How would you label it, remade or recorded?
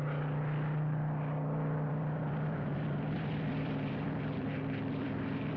remade